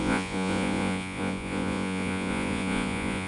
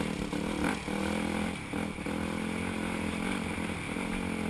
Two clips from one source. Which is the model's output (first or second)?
first